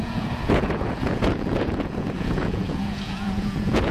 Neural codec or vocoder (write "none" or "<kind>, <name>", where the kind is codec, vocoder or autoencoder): vocoder, Vocos